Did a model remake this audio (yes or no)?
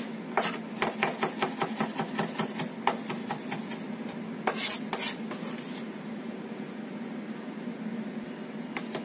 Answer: no